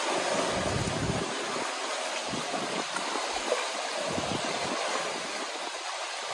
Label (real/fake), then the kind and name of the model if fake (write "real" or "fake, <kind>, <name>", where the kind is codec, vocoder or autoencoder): real